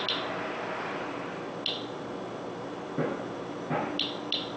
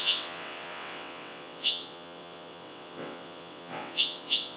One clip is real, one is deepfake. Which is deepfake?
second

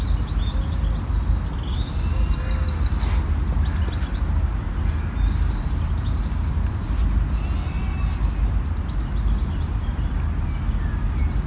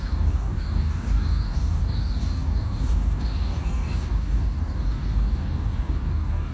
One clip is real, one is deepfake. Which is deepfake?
second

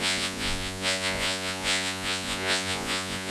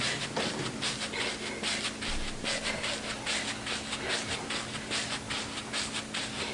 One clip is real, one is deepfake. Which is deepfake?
first